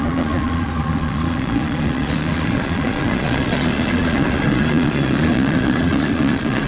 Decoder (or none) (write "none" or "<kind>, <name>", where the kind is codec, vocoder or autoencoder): vocoder, Vocos